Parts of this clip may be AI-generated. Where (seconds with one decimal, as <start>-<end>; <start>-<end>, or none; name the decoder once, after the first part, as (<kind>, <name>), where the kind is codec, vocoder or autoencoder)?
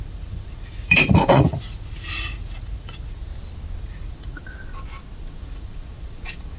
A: 0.0-3.3 (vocoder, Vocos); 3.8-4.4; 5.2-6.6